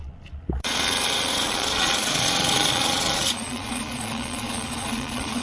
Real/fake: fake